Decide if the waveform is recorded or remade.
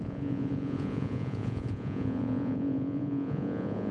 remade